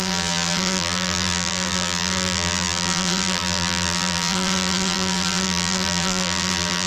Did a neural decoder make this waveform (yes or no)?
yes